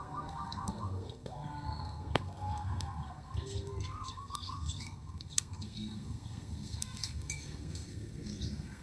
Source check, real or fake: fake